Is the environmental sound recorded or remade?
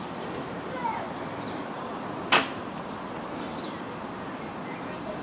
remade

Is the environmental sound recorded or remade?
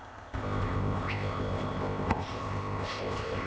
remade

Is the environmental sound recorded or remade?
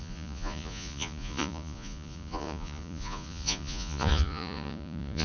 remade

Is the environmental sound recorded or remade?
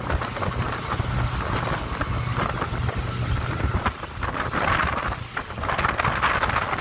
recorded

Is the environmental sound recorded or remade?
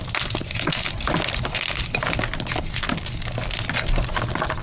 recorded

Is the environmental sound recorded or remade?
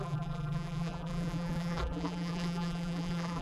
remade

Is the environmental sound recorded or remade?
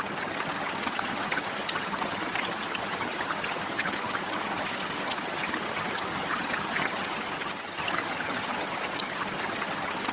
remade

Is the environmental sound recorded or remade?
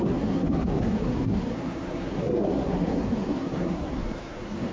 remade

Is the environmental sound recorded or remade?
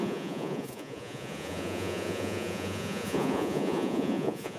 remade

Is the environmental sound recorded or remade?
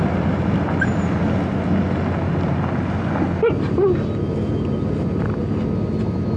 recorded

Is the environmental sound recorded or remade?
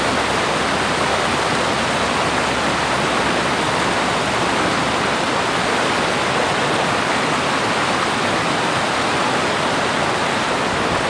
recorded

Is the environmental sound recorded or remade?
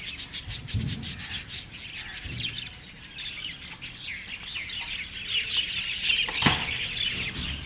recorded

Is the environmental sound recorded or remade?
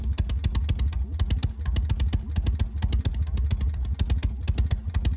recorded